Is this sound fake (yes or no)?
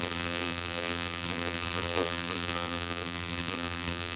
yes